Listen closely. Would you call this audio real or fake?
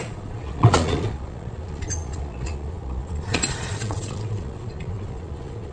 fake